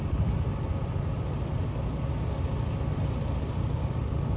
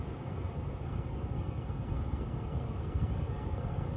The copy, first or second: second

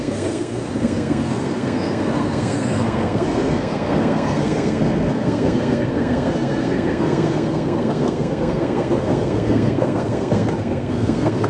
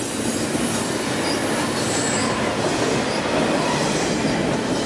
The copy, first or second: first